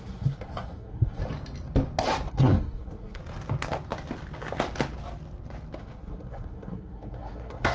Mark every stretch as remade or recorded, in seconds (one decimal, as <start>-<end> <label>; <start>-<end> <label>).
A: 0.0-1.2 remade; 1.2-2.3 recorded; 2.3-3.2 remade; 3.2-5.8 recorded; 5.8-7.7 remade